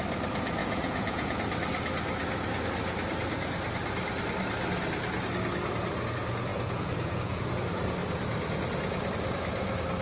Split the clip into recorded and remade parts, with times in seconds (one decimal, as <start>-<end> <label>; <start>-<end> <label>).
0.0-0.6 recorded; 0.6-1.4 remade; 1.4-6.5 recorded; 6.5-7.5 remade; 7.5-10.0 recorded